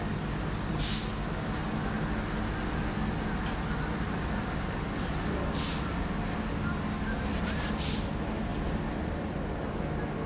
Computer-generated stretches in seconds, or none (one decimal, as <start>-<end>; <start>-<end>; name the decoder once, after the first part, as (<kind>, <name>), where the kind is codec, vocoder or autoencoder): 8.5-9.3 (vocoder, BigVGAN v2)